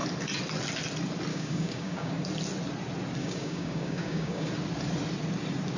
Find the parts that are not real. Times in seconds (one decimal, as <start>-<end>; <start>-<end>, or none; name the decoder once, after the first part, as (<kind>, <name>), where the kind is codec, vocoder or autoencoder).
1.3-2.1 (codec, DAC); 3.2-4.5